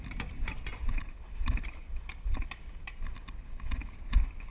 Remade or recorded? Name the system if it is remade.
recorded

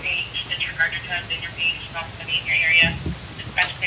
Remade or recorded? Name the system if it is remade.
recorded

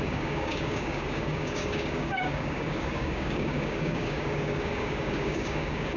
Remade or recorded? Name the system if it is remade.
remade, codec, DAC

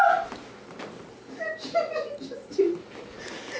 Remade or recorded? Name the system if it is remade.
recorded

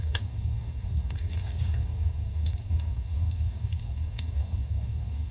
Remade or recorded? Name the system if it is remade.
remade, codec, DAC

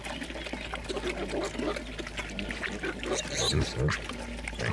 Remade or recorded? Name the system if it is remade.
recorded